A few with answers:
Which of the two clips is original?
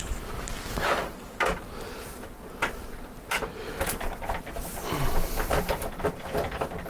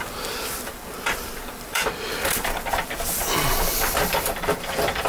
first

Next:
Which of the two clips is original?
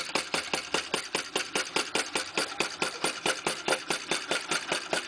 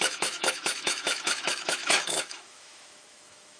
first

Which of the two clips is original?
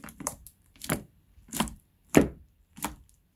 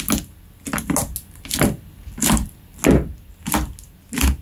second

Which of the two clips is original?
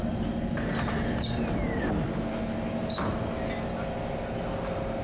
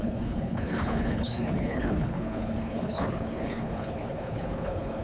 first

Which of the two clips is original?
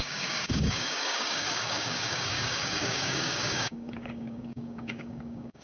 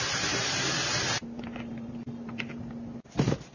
second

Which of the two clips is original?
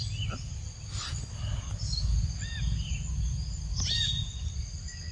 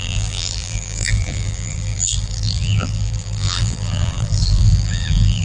first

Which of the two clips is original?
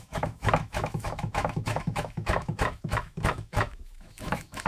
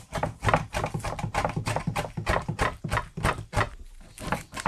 second